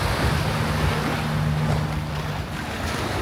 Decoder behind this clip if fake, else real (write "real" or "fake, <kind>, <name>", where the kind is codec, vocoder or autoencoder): real